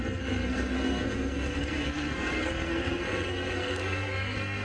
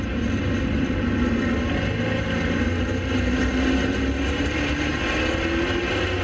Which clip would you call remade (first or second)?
first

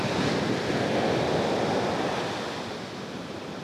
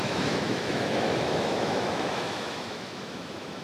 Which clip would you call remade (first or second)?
second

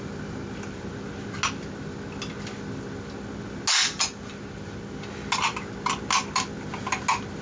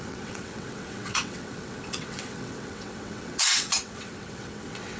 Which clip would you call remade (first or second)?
second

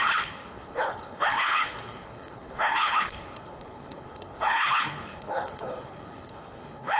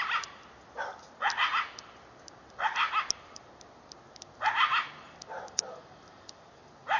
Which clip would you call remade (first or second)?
first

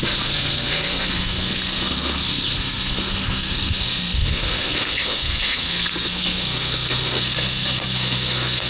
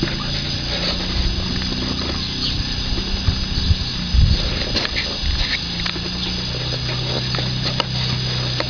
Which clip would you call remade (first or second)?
first